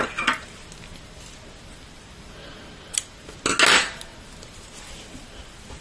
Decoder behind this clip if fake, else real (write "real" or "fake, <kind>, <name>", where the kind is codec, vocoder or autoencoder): real